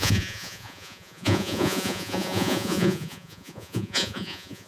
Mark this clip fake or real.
fake